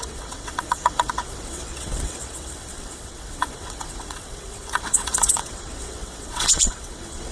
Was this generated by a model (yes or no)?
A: yes